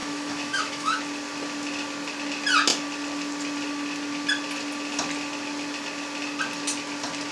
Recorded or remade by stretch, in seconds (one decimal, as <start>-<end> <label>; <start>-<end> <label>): 0.0-1.0 remade; 1.0-7.3 recorded